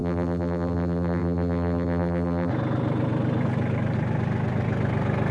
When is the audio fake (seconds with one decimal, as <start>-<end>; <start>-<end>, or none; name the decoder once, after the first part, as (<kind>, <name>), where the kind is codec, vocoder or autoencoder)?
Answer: 0.0-2.5 (vocoder, BigVGAN v2)